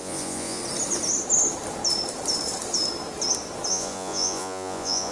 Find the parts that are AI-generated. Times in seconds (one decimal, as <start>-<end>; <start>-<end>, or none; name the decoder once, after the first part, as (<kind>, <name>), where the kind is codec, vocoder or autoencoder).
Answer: 0.0-0.6 (vocoder, Vocos); 3.7-5.1